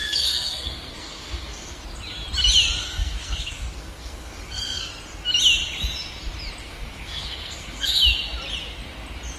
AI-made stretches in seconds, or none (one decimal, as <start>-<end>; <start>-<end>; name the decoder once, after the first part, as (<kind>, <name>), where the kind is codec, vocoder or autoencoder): 0.0-1.8 (codec, SNAC); 2.8-4.9; 6.6-8.0